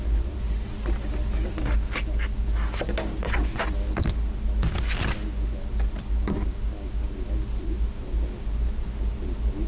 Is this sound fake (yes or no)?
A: no